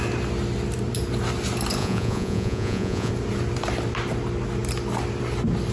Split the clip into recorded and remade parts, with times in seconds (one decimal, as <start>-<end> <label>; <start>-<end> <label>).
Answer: 0.0-1.8 recorded; 1.8-3.1 remade; 3.1-5.7 recorded